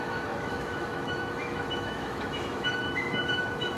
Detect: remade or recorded remade